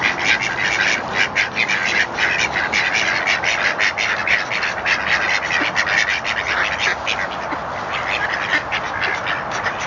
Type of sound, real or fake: real